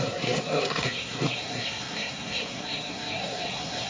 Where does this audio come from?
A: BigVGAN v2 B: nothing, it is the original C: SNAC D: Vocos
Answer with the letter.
C